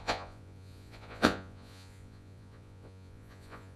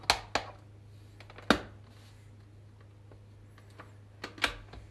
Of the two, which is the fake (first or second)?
first